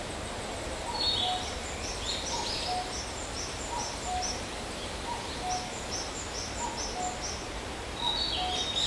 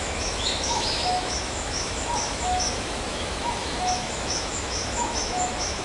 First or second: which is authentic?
first